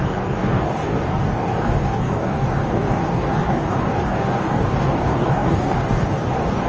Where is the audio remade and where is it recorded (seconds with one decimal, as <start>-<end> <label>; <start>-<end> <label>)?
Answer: 0.0-6.7 remade